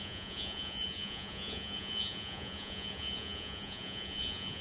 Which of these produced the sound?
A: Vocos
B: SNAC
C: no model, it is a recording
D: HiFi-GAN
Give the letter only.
A